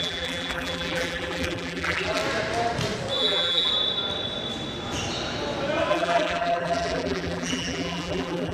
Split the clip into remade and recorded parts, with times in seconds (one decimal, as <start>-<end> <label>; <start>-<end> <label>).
0.0-2.2 remade; 2.2-3.2 recorded; 3.2-3.7 remade; 3.7-5.9 recorded; 5.9-8.5 remade